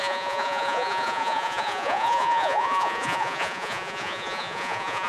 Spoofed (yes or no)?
yes